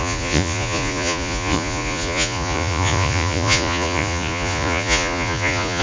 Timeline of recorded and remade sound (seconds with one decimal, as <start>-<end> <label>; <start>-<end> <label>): 0.0-5.8 remade